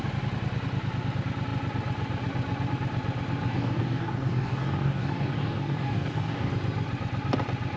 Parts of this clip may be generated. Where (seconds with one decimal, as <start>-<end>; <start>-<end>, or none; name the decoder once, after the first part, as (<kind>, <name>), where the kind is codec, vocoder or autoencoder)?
3.5-6.5 (codec, DAC)